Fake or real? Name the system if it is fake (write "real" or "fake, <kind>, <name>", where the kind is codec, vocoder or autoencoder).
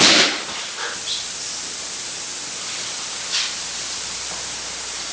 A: real